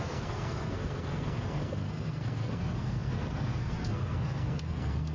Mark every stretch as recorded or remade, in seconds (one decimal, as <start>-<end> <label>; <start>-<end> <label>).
0.0-5.1 remade